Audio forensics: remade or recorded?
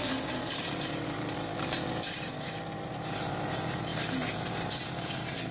remade